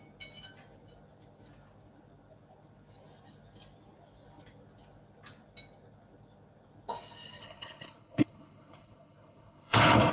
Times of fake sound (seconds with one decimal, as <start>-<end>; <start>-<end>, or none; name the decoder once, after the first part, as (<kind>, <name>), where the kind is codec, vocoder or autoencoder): 7.4-10.1 (codec, HILCodec)